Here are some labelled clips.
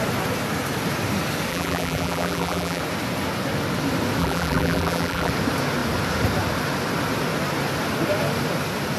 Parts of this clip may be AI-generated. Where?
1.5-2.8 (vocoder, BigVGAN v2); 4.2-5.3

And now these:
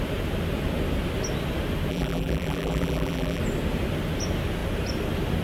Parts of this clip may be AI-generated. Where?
1.9-3.4 (vocoder, BigVGAN v2)

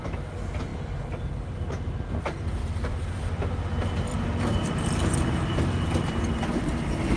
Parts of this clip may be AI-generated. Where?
2.6-3.2 (vocoder, BigVGAN v2); 4.1-5.6